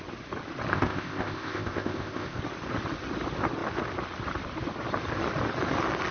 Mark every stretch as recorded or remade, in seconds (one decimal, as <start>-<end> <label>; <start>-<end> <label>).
0.0-0.7 recorded; 0.7-2.4 remade; 2.4-6.1 recorded